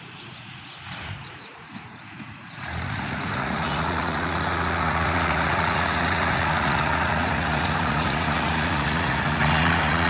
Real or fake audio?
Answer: fake